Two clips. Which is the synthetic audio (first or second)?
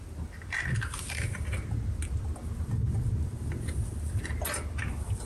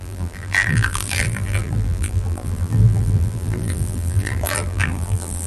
second